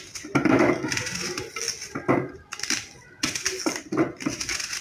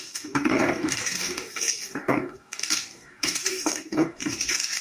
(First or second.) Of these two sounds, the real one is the first